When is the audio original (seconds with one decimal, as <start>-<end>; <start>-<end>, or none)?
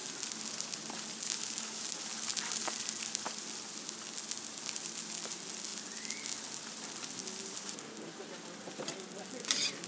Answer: 0.0-9.9